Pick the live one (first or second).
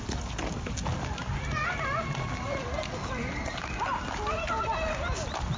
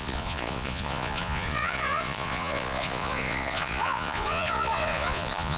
first